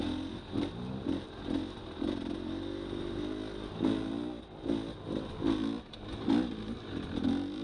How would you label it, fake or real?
real